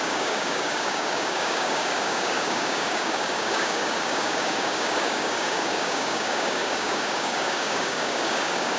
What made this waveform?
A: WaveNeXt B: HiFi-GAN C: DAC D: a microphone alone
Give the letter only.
C